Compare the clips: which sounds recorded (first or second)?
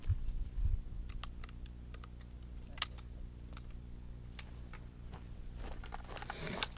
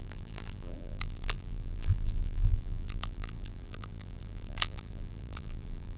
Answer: first